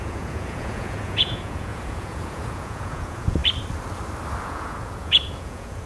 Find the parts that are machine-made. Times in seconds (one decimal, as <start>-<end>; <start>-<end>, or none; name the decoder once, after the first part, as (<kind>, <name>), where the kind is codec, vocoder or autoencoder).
0.0-3.4 (vocoder, Vocos); 4.4-5.9